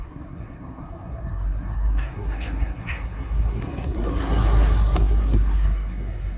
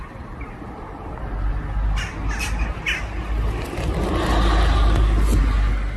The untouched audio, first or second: second